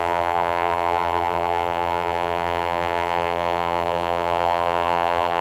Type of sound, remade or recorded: remade